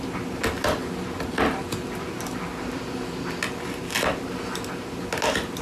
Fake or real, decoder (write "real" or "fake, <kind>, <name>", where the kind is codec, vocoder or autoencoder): real